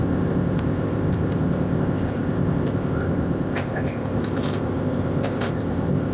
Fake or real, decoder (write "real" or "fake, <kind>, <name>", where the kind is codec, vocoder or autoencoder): fake, codec, ZipCodec